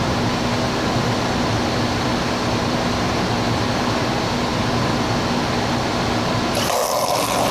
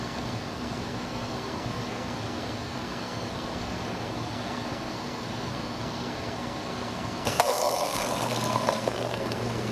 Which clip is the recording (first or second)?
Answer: first